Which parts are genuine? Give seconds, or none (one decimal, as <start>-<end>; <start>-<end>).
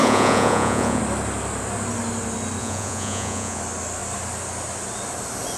1.0-2.6; 3.6-5.6